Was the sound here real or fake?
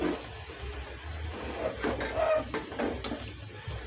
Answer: real